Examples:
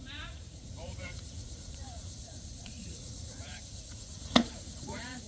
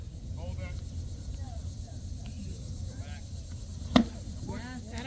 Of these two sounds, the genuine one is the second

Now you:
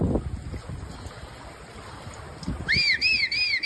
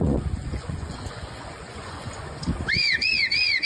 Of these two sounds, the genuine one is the first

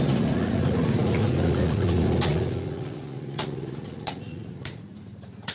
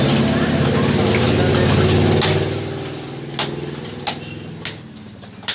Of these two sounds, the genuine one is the second